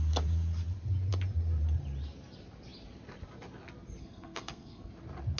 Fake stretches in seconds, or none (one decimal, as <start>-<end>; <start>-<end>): 4.0-4.9